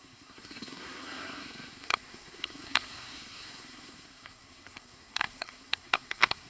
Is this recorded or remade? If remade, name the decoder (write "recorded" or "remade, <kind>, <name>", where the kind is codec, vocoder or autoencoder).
remade, codec, SNAC